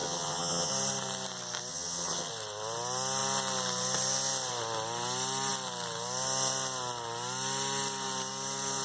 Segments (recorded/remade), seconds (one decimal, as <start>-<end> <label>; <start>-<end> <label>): 0.0-0.7 remade; 0.7-1.7 recorded; 1.7-2.3 remade; 2.3-8.8 recorded